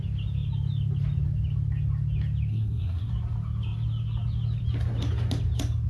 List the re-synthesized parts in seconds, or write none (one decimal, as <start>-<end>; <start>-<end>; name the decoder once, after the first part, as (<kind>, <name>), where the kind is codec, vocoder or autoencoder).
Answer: 2.5-3.1 (codec, SNAC)